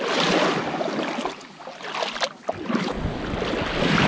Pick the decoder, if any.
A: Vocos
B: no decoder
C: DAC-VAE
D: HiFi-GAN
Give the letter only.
B